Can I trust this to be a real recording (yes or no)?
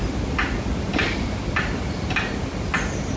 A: yes